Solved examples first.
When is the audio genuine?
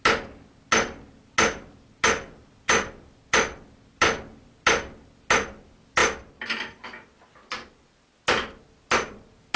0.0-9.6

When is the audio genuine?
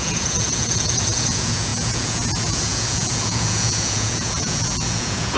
none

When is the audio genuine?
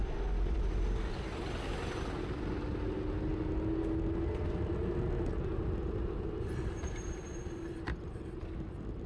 0.0-9.1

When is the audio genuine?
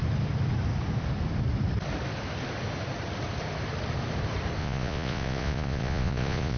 0.0-4.6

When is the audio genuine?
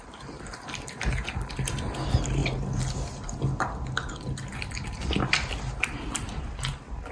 0.0-7.1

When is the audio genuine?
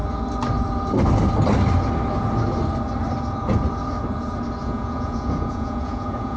0.0-4.6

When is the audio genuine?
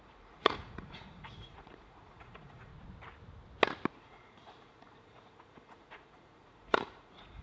2.7-3.9